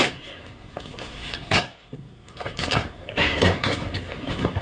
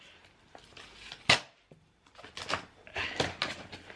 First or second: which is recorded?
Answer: second